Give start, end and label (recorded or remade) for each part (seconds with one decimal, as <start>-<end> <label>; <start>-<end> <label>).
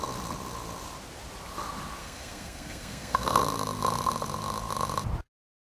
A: 0.0-2.0 recorded; 2.0-3.4 remade; 3.4-5.7 recorded